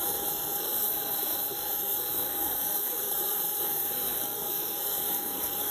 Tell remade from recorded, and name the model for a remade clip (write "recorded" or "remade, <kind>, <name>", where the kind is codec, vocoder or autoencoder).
remade, codec, SNAC